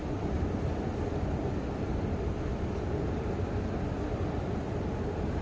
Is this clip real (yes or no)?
yes